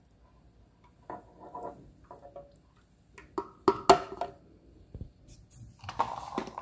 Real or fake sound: real